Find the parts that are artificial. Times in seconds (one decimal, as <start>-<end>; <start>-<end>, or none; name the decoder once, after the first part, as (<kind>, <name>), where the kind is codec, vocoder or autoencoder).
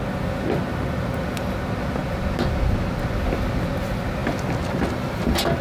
none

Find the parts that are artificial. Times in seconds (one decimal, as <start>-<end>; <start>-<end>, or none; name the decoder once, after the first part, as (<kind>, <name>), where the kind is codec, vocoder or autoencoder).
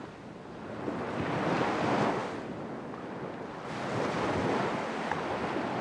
none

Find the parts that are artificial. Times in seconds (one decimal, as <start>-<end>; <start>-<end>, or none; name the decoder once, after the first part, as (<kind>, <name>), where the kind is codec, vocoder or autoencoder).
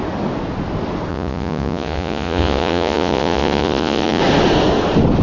1.1-4.2 (vocoder, Vocos)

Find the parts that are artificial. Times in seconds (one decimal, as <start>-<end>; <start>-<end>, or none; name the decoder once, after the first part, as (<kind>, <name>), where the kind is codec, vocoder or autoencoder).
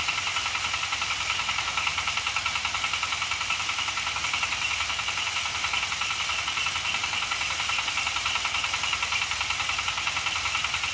none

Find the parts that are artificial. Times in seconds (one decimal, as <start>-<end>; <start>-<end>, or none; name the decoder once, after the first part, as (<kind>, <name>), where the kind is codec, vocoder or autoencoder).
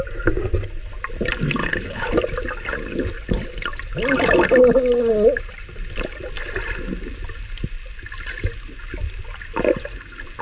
1.6-2.1 (codec, HILCodec)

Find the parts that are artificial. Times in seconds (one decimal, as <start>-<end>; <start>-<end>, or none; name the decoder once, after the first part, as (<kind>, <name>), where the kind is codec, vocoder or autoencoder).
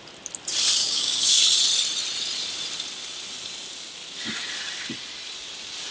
0.8-1.4 (codec, DAC)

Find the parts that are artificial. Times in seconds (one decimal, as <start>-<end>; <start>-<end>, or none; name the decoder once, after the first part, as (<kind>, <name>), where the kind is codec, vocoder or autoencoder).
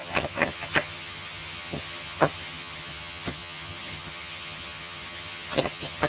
0.0-6.1 (vocoder, HiFi-GAN)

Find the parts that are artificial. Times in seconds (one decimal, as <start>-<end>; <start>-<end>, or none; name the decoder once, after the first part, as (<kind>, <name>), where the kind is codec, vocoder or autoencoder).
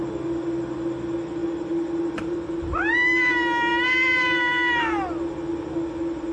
1.4-2.5 (vocoder, BigVGAN v2)